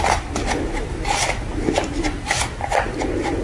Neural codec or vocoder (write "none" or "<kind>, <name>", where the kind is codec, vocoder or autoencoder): none